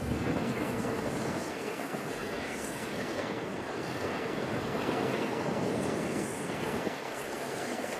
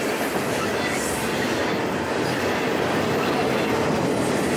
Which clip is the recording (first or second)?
second